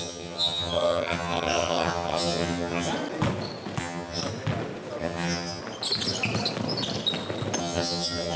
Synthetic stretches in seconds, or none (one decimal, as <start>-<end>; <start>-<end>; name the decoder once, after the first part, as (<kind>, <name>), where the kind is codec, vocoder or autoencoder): 0.0-2.9 (vocoder, HiFi-GAN); 3.8-4.2; 5.0-5.6; 7.6-8.4